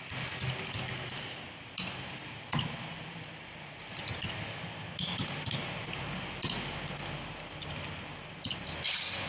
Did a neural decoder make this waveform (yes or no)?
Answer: no